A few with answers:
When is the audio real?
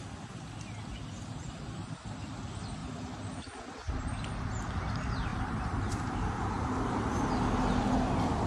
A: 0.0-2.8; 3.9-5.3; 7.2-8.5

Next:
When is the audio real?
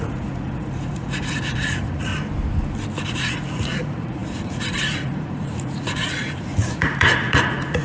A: 2.1-3.1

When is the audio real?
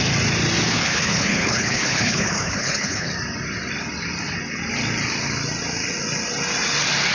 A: 0.0-0.7; 3.1-7.1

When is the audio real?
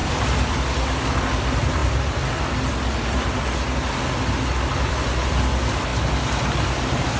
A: 1.0-4.8; 5.3-5.9; 6.8-7.2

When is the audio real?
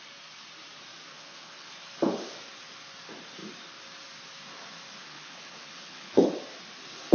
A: 0.0-1.1; 1.9-5.0; 6.3-7.1